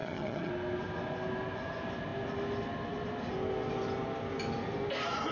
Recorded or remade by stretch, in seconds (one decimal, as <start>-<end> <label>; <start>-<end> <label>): 0.0-0.5 remade; 0.5-5.3 recorded